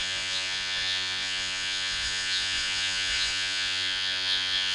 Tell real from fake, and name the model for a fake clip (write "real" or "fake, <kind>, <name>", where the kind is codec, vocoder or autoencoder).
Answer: fake, vocoder, Vocos